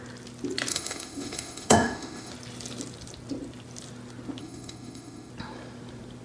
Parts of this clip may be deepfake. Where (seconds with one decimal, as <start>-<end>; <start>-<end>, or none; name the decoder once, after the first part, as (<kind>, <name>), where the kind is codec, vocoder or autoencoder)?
0.7-2.3 (autoencoder, DAC-VAE); 4.4-5.3